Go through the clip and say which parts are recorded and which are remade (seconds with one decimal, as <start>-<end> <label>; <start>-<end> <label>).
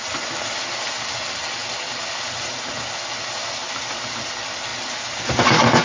0.0-5.8 recorded